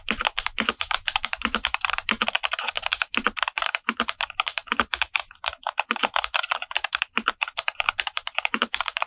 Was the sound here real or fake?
fake